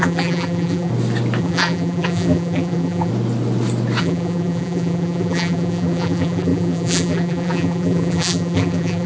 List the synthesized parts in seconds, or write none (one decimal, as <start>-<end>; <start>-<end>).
0.0-0.9; 1.4-3.1; 4.0-9.1